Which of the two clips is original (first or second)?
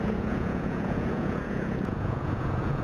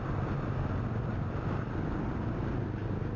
second